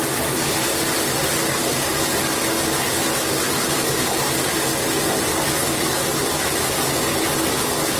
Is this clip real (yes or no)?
yes